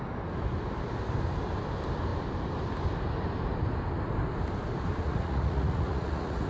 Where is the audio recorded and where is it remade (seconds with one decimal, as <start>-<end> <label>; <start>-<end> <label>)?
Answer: 0.0-5.0 recorded; 5.0-6.5 remade